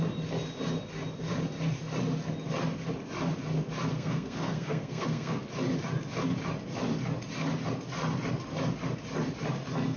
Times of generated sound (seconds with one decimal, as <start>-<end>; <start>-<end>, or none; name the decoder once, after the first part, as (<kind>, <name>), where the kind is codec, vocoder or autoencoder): 3.9-5.4 (codec, SNAC)